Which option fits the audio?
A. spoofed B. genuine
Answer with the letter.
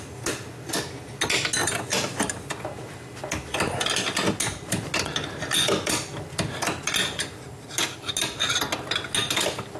B